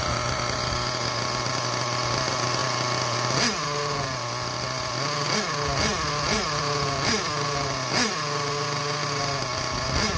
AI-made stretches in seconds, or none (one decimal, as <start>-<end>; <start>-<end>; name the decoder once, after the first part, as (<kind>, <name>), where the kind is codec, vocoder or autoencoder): none